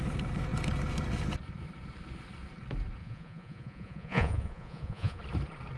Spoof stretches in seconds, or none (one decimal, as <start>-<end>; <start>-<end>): 3.0-5.2